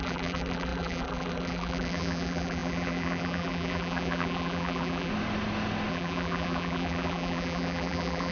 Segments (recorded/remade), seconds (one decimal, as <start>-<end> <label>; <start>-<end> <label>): 0.0-5.1 remade; 5.1-5.9 recorded; 5.9-8.3 remade